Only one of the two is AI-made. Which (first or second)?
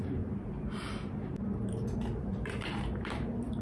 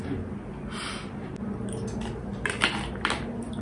first